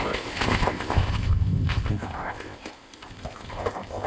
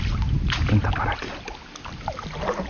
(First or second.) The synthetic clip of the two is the first